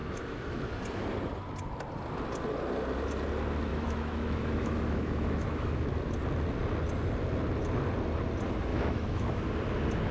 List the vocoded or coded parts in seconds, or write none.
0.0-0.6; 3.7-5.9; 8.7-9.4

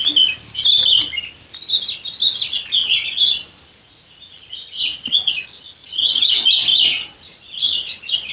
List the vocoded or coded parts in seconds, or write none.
3.8-5.3; 5.8-6.3; 6.7-8.3

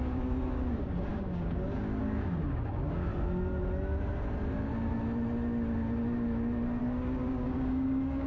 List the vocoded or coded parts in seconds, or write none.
0.0-3.1; 6.8-8.3

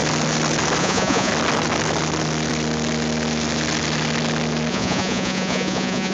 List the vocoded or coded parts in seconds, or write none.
0.8-1.3; 4.7-6.1

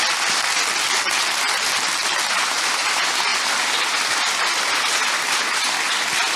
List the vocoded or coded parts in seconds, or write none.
none

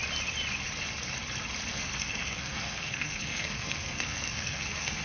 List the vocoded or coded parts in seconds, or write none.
1.7-5.0

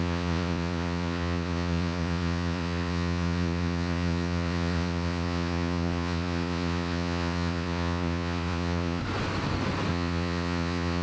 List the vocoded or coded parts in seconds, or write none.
0.0-9.0; 9.9-11.0